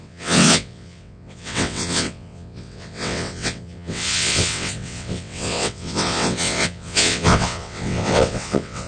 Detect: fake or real fake